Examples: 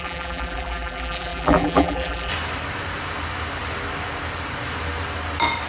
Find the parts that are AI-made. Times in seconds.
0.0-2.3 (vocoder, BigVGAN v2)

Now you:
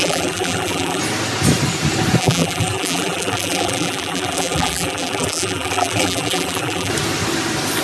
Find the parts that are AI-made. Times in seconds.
0.0-1.0 (vocoder, BigVGAN v2); 2.2-6.9